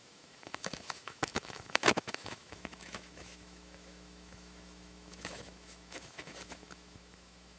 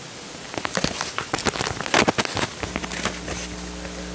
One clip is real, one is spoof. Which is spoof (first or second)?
first